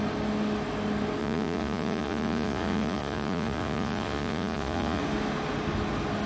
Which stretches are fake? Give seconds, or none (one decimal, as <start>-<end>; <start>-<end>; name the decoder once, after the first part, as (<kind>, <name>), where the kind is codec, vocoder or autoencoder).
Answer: 1.2-5.0 (vocoder, Vocos)